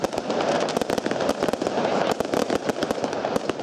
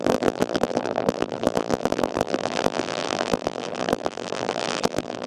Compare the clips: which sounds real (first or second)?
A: first